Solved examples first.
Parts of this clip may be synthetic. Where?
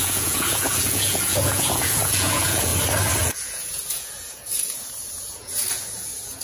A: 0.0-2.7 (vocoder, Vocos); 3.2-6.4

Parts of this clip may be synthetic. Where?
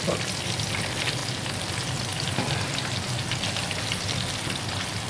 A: none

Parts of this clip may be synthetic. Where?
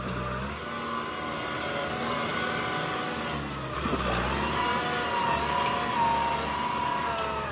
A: none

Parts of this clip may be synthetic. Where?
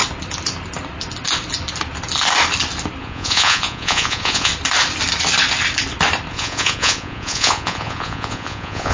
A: 3.0-4.5 (vocoder, Vocos); 6.3-8.9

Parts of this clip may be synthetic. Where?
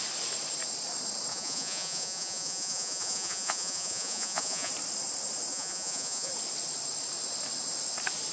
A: 1.3-4.7 (vocoder, Vocos); 5.5-6.3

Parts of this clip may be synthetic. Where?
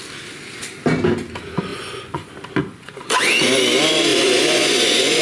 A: 1.7-2.3 (vocoder, Vocos); 2.7-3.3; 4.1-5.2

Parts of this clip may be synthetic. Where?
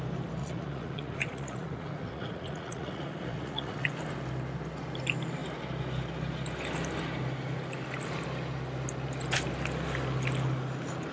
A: 0.4-3.9 (vocoder, Vocos)